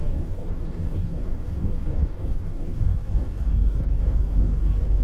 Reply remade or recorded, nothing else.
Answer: remade